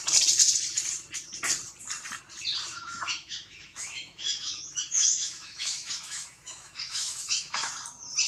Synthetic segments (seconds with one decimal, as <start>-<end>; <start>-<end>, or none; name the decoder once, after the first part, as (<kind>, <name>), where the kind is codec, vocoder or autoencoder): 2.7-7.7 (autoencoder, DAC-VAE)